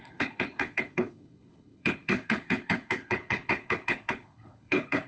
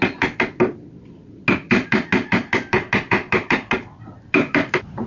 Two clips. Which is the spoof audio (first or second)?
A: first